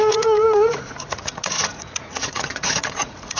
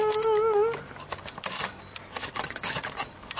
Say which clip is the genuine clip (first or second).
second